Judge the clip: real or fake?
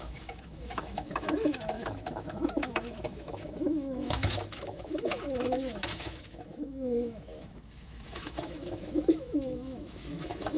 fake